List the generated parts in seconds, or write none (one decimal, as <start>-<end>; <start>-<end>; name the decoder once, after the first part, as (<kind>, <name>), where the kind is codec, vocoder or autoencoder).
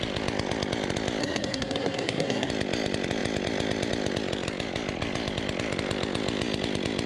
1.2-2.5 (codec, SNAC)